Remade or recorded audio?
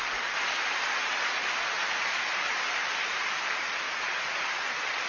recorded